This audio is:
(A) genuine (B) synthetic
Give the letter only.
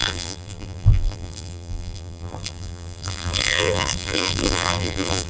B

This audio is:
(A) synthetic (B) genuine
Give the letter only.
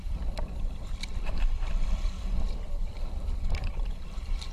A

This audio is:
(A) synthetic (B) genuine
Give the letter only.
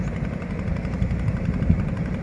A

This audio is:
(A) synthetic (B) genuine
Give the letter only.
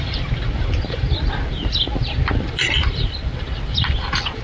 A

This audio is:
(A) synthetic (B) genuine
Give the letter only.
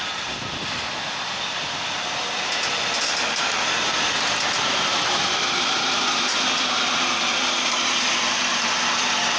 A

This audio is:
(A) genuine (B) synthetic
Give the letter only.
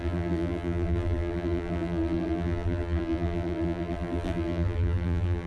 B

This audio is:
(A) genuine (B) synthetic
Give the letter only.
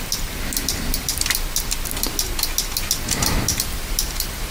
A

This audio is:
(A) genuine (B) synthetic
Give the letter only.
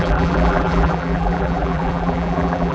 B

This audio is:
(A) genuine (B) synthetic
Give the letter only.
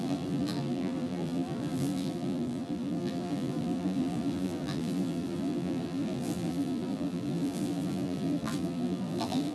B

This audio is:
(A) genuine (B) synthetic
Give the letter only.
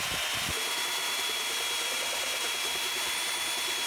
B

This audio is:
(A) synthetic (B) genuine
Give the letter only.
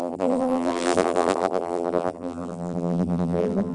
A